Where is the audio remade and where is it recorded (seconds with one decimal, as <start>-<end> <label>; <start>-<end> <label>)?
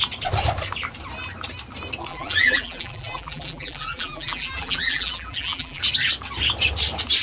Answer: 0.0-2.1 recorded; 2.1-5.8 remade; 5.8-7.2 recorded